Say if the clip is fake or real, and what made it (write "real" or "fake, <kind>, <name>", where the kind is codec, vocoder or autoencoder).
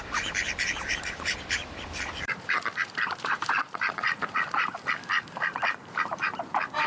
fake, vocoder, BigVGAN v2